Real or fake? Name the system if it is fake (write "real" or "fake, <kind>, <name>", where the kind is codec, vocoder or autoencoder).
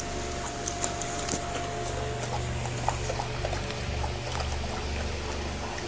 real